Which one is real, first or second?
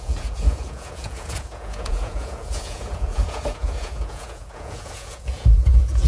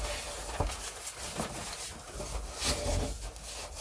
second